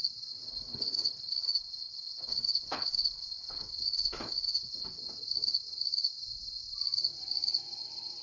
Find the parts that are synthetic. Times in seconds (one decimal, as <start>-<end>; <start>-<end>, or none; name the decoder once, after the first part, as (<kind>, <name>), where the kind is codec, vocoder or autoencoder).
0.5-5.0 (codec, HILCodec)